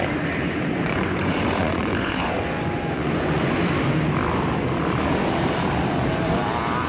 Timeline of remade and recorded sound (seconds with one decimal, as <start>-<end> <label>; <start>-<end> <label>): 0.0-0.8 recorded; 0.8-3.6 remade; 3.6-6.9 recorded